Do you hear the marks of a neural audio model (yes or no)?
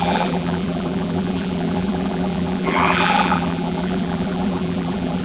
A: yes